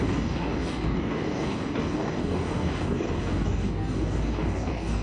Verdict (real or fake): fake